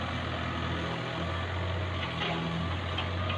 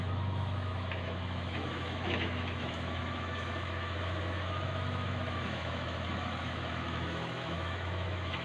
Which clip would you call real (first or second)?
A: first